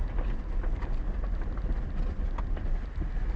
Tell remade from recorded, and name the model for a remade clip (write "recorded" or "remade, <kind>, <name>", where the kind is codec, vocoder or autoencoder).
recorded